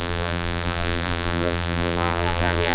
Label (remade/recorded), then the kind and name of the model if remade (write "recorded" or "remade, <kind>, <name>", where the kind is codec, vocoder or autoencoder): remade, vocoder, BigVGAN v2